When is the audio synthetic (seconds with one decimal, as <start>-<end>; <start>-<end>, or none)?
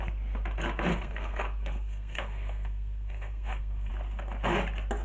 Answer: 0.9-3.9